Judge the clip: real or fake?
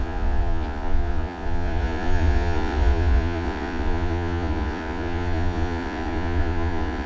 fake